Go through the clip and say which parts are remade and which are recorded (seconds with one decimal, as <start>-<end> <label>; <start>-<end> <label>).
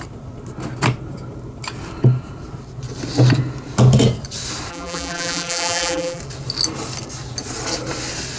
0.0-4.7 recorded; 4.7-6.2 remade; 6.2-8.4 recorded